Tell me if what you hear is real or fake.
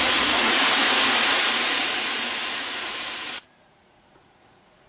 fake